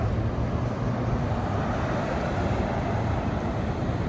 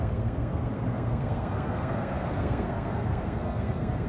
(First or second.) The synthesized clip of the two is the second